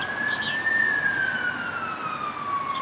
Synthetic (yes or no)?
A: no